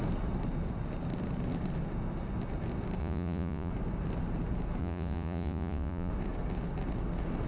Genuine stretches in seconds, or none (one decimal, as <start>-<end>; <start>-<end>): 0.0-3.0; 3.7-4.8; 6.1-7.5